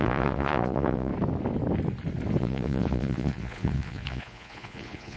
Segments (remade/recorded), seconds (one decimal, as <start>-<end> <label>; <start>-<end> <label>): 0.0-1.1 remade; 1.1-2.4 recorded; 2.4-5.2 remade